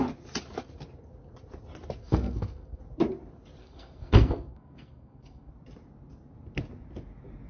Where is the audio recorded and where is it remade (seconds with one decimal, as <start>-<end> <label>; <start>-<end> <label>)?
0.0-2.0 recorded; 2.0-2.8 remade; 2.8-3.6 recorded; 3.6-5.5 remade; 5.5-7.5 recorded